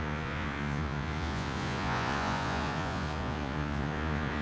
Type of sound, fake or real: fake